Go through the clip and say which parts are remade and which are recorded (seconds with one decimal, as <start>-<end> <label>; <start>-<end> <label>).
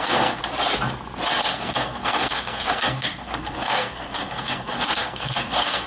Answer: 0.0-0.4 remade; 0.4-1.5 recorded; 1.5-5.9 remade